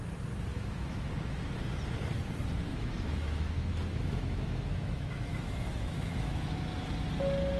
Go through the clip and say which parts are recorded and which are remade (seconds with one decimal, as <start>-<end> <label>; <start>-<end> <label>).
0.0-0.5 recorded; 0.5-1.1 remade; 1.1-2.7 recorded; 2.7-6.5 remade; 6.5-7.6 recorded